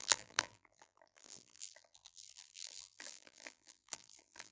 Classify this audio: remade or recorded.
remade